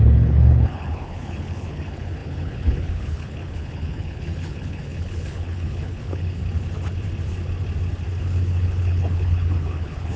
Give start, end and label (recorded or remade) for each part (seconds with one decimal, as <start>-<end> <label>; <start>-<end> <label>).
0.0-6.4 remade; 6.4-8.2 recorded; 8.2-10.2 remade